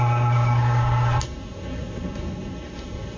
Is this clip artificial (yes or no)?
yes